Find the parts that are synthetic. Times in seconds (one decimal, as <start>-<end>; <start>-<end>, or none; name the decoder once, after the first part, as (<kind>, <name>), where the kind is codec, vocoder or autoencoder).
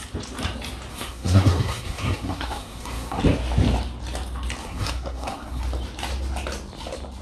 0.9-3.2 (codec, SNAC); 4.6-5.6